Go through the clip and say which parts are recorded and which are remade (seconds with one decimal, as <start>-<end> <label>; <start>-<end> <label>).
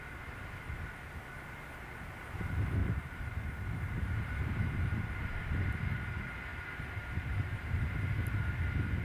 0.0-2.8 recorded; 2.8-4.6 remade; 4.6-6.5 recorded; 6.5-8.0 remade; 8.0-9.0 recorded